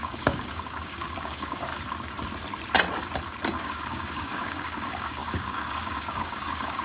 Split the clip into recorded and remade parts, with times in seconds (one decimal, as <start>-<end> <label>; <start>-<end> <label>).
0.0-1.7 remade; 1.7-3.6 recorded; 3.6-6.8 remade